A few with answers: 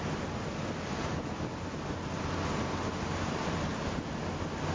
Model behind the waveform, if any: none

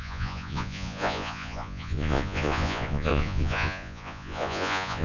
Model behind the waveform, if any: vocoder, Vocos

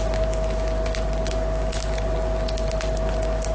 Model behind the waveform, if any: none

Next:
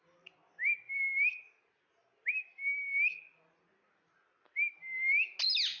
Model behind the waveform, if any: none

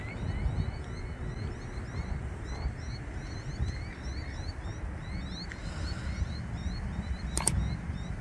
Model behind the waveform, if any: none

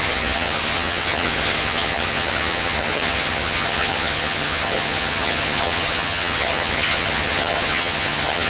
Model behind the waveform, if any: vocoder, HiFi-GAN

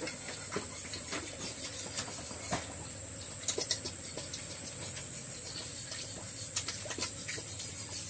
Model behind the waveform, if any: none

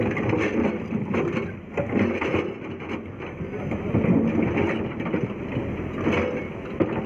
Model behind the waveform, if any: none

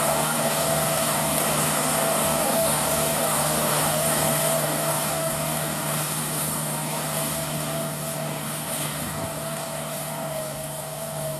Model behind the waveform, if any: codec, DAC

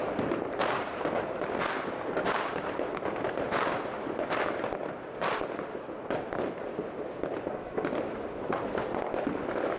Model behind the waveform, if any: vocoder, BigVGAN v2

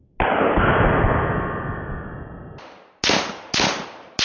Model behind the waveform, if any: none